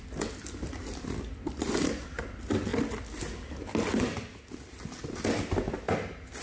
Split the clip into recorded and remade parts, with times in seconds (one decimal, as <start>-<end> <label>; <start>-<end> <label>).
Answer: 0.0-6.4 recorded